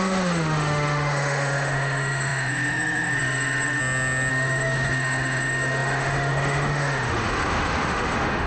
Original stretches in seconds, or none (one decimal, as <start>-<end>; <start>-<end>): 3.8-4.3